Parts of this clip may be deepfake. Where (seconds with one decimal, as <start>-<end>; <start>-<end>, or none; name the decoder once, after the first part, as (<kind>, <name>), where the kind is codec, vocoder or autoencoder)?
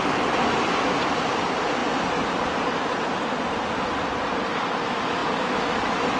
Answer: none